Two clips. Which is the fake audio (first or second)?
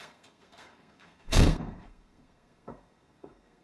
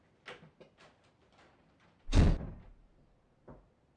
first